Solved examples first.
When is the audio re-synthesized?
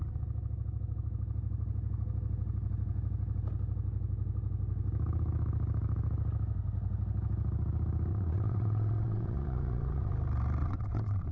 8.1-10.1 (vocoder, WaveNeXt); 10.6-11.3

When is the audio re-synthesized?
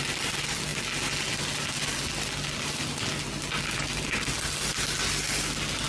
none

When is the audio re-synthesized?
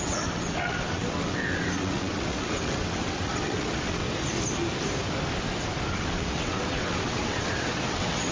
0.0-4.0 (vocoder, WaveNeXt); 5.9-8.3